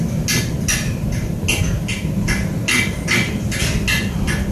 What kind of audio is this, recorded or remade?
recorded